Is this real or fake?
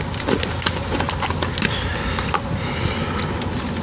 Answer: real